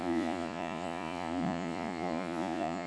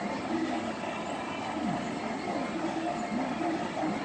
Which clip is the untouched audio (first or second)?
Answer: second